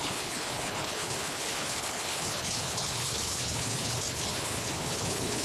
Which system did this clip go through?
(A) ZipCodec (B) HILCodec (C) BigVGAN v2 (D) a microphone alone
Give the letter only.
B